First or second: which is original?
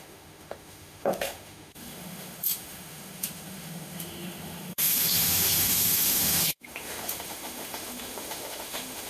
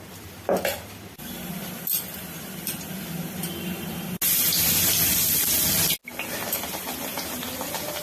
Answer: second